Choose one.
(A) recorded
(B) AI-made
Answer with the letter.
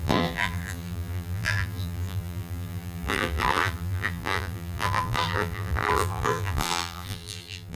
B